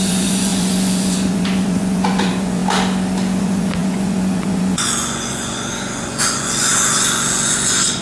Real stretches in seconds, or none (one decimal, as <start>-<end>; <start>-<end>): 2.6-3.4